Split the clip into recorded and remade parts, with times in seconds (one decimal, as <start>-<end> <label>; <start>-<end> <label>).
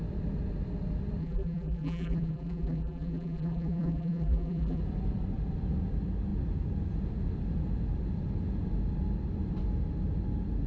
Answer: 0.0-1.2 recorded; 1.2-4.8 remade; 4.8-10.7 recorded